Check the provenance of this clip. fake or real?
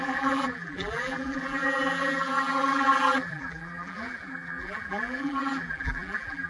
fake